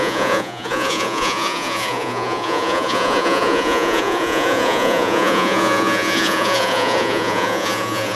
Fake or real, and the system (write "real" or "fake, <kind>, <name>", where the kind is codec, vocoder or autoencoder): fake, vocoder, Vocos